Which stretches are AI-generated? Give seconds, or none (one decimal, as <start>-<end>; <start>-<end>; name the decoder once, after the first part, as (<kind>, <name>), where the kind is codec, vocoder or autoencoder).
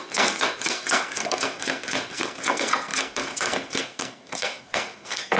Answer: 0.0-5.4 (codec, SNAC)